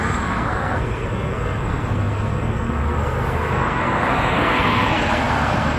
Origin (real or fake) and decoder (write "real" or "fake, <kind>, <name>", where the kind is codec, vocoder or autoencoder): fake, codec, SNAC